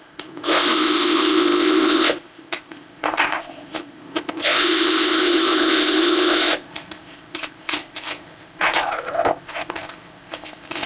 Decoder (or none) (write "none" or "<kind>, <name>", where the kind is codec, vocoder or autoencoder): codec, ZipCodec